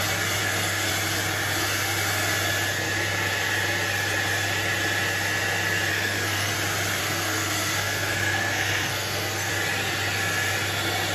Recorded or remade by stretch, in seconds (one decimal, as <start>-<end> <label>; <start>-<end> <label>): 0.0-0.4 recorded; 0.4-0.9 remade; 0.9-5.9 recorded; 5.9-6.5 remade; 6.5-7.0 recorded; 7.0-9.5 remade; 9.5-11.1 recorded